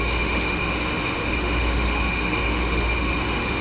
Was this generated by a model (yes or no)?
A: yes